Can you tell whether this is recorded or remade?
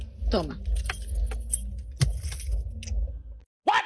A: recorded